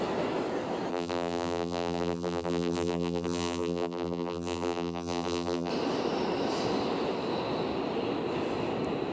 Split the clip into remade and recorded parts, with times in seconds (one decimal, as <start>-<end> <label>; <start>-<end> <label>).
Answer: 0.0-0.9 recorded; 0.9-5.7 remade; 5.7-9.1 recorded